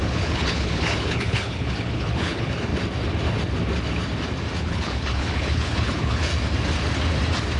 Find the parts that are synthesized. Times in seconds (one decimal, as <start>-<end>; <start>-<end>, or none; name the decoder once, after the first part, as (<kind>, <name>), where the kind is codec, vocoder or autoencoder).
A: 0.0-2.7 (codec, HILCodec); 4.6-6.3